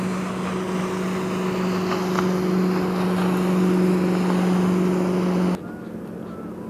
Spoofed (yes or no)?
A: no